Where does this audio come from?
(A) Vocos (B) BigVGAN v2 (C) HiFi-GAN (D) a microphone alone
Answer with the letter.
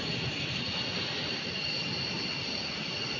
D